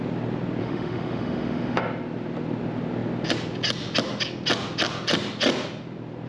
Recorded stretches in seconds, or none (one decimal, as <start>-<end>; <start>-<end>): 0.0-0.6; 1.8-6.3

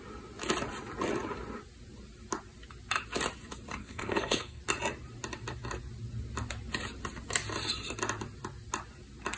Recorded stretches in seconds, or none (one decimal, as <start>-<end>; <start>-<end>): 0.0-3.8; 4.6-9.4

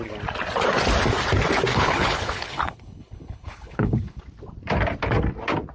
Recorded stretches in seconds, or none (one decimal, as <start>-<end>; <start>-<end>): 0.0-1.7; 4.2-5.7